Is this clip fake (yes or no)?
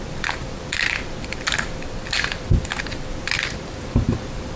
yes